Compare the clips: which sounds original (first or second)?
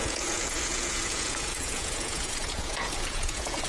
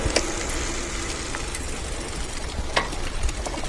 second